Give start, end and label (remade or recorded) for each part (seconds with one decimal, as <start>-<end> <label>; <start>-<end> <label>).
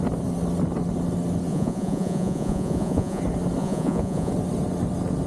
0.0-1.5 recorded; 1.5-3.2 remade; 3.2-3.6 recorded; 3.6-4.3 remade; 4.3-5.3 recorded